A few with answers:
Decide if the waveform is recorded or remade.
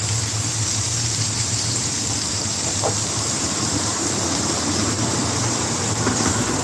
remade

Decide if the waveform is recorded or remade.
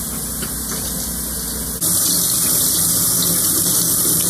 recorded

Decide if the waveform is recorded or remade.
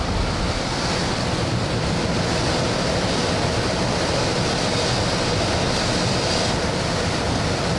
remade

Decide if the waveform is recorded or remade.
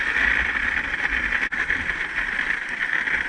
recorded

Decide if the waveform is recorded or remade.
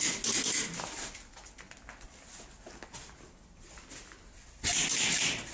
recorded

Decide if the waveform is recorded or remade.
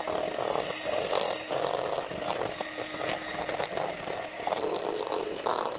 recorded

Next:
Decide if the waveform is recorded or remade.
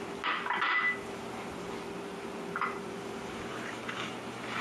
recorded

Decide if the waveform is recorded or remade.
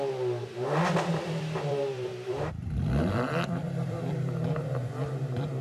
remade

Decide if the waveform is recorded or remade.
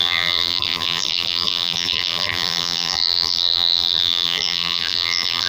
remade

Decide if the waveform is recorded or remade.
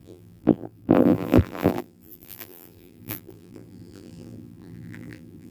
remade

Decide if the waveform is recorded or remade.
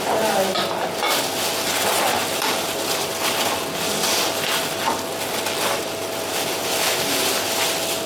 recorded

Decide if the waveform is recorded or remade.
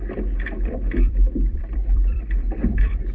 remade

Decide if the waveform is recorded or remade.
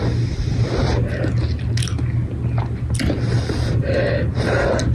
recorded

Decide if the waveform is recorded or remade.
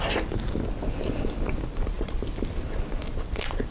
recorded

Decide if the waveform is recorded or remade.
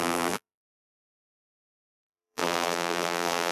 remade